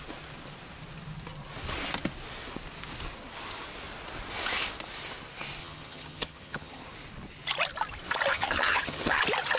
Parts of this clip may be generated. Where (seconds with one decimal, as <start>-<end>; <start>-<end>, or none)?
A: 5.6-6.8; 8.3-9.2